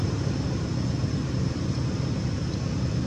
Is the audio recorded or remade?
recorded